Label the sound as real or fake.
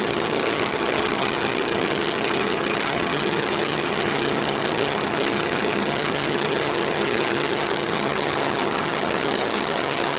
fake